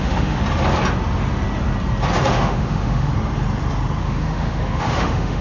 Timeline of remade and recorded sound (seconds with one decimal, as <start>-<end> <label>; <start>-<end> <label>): 0.0-0.4 remade; 0.4-2.2 recorded; 2.2-3.1 remade; 3.1-4.0 recorded; 4.0-5.4 remade